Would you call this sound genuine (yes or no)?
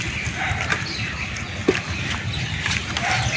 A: yes